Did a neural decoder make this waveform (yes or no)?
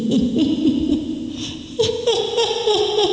no